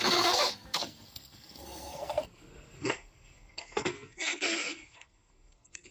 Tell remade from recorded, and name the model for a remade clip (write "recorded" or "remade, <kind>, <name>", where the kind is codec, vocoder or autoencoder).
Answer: remade, codec, SNAC